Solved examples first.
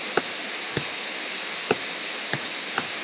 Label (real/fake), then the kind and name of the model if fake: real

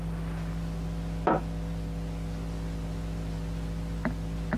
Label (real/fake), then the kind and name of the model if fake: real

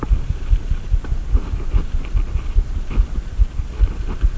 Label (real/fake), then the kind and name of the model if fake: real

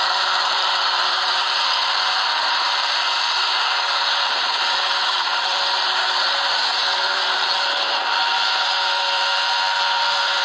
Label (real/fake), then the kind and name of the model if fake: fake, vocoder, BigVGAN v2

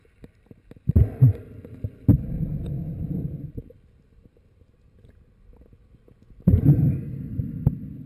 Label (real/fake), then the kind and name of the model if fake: real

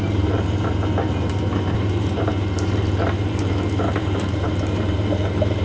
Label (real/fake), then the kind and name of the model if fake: fake, vocoder, BigVGAN v2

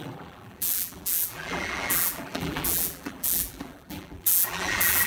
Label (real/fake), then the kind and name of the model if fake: fake, vocoder, BigVGAN v2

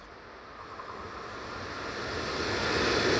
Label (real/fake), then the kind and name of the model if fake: real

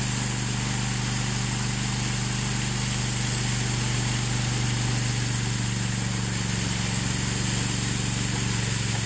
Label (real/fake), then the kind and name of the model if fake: real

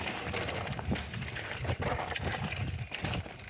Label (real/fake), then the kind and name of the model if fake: real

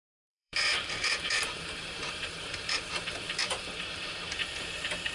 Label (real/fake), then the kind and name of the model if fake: fake, vocoder, BigVGAN v2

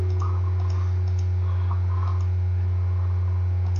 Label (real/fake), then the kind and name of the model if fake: real